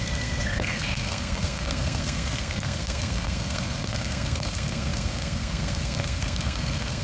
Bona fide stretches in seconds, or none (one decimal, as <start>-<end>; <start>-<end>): none